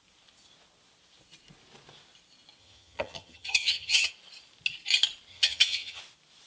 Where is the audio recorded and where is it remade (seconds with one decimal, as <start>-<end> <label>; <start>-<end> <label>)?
0.0-2.6 recorded; 2.6-4.1 remade; 4.1-5.3 recorded; 5.3-6.0 remade; 6.0-6.5 recorded